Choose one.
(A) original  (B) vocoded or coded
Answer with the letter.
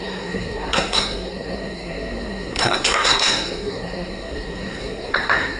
B